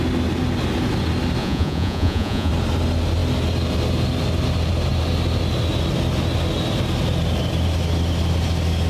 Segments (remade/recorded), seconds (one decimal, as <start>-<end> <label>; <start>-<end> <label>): 0.0-1.4 recorded; 1.4-2.5 remade; 2.5-8.9 recorded